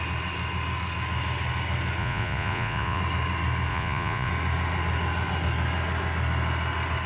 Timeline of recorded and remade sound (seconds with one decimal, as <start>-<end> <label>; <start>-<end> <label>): 0.0-2.0 recorded; 2.0-3.0 remade; 3.0-3.7 recorded; 3.7-4.3 remade; 4.3-7.1 recorded